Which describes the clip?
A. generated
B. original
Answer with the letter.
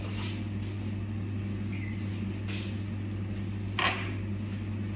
B